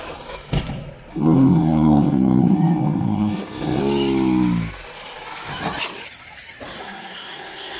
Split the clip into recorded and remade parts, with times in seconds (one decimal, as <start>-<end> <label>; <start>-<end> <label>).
0.0-1.1 recorded; 1.1-3.8 remade; 3.8-6.8 recorded; 6.8-7.8 remade